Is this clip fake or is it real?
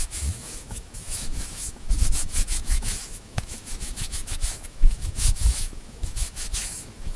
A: fake